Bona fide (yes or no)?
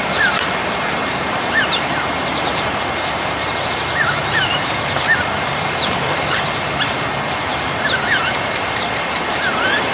no